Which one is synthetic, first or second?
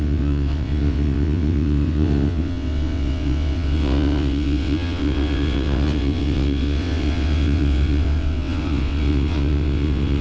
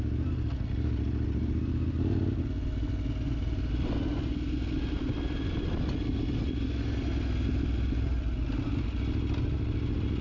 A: first